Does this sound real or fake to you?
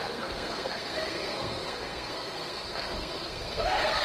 fake